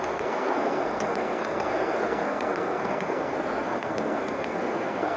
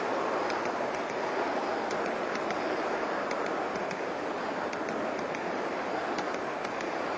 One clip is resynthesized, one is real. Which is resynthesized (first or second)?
first